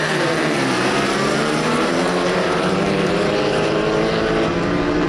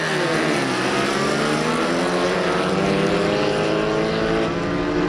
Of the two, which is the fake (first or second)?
first